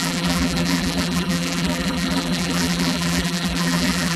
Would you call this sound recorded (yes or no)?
no